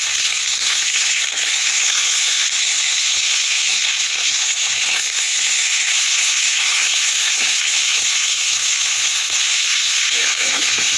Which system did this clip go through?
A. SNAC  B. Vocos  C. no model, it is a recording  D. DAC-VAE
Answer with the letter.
A